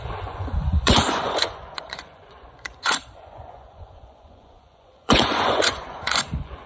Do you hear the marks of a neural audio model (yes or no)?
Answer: yes